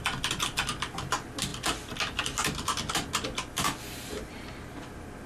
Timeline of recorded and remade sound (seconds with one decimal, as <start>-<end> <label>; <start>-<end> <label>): 0.0-5.3 recorded